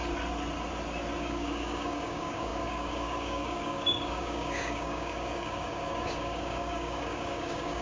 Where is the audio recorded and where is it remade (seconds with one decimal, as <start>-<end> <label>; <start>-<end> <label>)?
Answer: 0.0-1.2 recorded; 1.2-7.8 remade